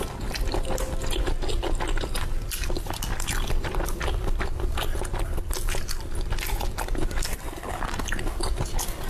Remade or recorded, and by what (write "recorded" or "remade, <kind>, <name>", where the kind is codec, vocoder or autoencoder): recorded